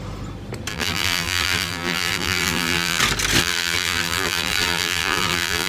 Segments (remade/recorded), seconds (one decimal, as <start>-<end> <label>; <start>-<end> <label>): 0.0-0.7 recorded; 0.7-3.0 remade; 3.0-3.4 recorded; 3.4-5.7 remade